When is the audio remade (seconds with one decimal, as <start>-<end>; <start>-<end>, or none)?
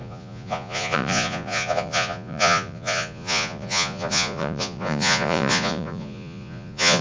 0.0-7.0